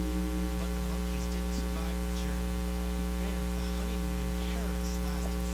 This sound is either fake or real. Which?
real